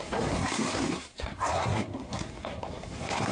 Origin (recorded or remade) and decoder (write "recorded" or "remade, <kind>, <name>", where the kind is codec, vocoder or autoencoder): remade, codec, SNAC